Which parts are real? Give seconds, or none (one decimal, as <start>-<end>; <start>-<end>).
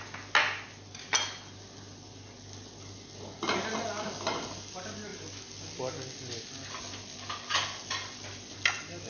0.0-9.1